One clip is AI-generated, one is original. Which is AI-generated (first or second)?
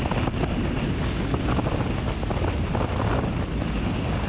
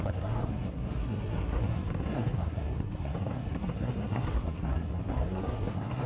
second